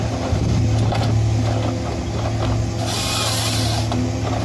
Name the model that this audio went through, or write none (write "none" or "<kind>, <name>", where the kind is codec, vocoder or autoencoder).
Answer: none